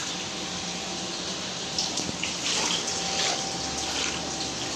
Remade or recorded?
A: recorded